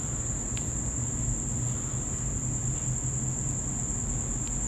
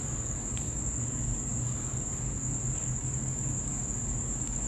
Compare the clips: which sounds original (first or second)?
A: first